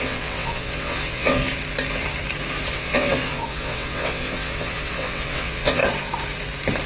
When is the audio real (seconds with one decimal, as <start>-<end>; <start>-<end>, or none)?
1.4-2.7; 5.8-6.9

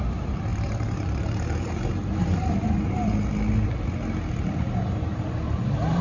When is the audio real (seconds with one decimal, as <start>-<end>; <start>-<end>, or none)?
0.0-0.5; 3.3-6.0

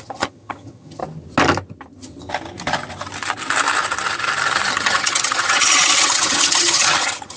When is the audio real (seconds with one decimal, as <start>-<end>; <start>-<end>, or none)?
1.0-4.7

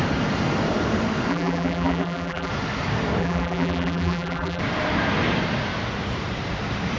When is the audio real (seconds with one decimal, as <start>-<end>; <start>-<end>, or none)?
0.0-1.3; 2.5-3.2; 4.6-7.0

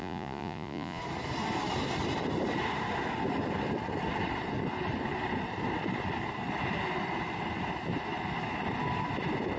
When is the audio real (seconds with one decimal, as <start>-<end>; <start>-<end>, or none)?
1.0-9.6

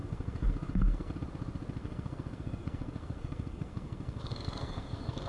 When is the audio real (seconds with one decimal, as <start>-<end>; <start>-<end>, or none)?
1.1-1.8

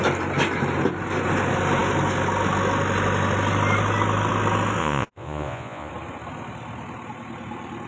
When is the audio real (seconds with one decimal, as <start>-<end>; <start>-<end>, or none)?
0.0-4.8; 5.9-7.9